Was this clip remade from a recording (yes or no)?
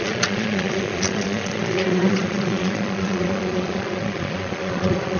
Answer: yes